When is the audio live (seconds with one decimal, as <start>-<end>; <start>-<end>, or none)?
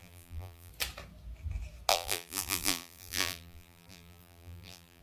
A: 0.7-1.9